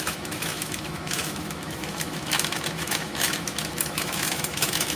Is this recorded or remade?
remade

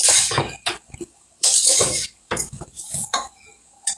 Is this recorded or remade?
remade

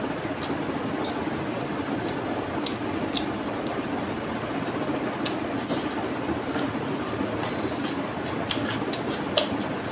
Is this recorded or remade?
recorded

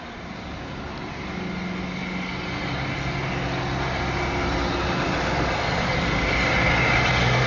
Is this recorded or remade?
recorded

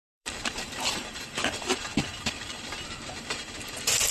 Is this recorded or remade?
remade